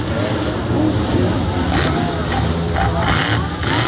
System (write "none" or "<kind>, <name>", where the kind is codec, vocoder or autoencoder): none